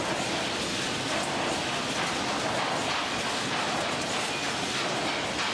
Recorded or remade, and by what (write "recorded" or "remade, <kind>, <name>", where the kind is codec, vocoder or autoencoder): recorded